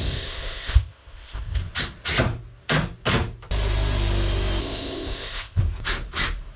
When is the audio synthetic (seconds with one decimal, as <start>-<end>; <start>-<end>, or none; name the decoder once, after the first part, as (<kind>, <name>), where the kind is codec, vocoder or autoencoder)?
0.0-1.6 (codec, ZipCodec); 4.6-5.6